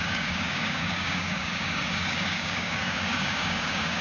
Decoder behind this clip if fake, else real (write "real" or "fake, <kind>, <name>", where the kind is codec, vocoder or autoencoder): fake, codec, DAC